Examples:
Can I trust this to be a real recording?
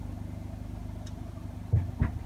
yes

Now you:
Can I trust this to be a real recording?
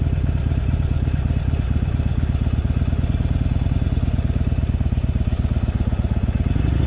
yes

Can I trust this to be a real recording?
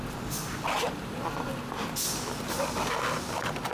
yes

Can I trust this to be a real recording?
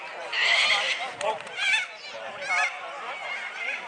yes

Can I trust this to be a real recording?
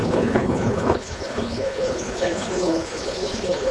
no